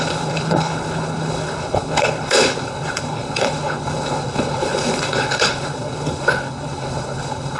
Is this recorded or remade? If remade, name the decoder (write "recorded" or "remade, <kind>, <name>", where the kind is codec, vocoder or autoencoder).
remade, codec, HILCodec